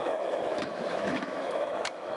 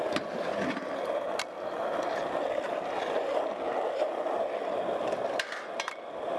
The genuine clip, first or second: second